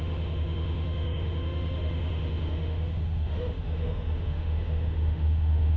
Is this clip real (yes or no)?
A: no